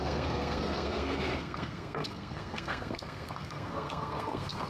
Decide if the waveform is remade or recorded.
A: remade